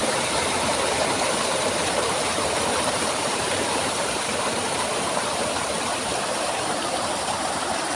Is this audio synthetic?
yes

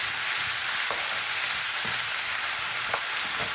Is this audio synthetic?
no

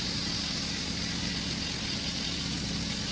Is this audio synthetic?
no